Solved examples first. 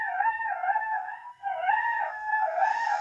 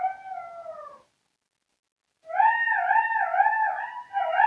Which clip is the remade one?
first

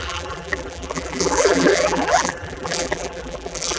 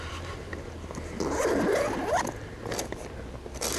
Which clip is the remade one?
first